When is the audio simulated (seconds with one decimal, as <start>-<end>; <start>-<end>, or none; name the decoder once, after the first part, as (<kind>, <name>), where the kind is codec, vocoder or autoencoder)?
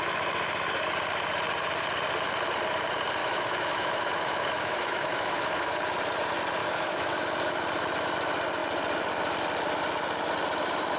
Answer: 3.2-5.7 (autoencoder, DAC-VAE); 6.6-7.1